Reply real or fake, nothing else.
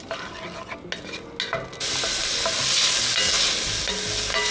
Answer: real